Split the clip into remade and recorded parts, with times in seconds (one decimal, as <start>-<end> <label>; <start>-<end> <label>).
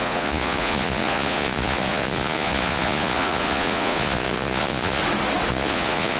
0.0-5.0 remade; 5.0-5.5 recorded; 5.5-6.2 remade